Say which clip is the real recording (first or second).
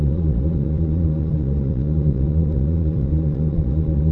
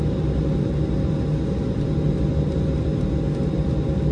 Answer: second